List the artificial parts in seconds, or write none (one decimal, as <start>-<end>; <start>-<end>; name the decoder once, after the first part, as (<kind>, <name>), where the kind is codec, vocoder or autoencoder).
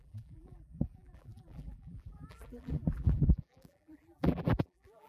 0.0-5.1 (vocoder, BigVGAN v2)